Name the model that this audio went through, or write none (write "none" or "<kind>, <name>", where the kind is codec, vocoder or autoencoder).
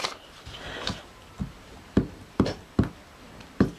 none